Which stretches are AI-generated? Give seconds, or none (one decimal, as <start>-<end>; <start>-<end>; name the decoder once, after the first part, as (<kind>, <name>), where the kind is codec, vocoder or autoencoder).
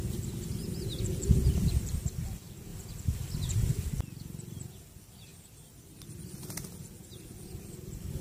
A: 2.7-3.7 (vocoder, BigVGAN v2); 5.3-6.2